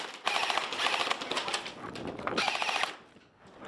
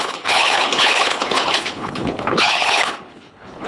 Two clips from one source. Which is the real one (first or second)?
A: first